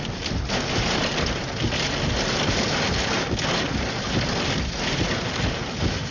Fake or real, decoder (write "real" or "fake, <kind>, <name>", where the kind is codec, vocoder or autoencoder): real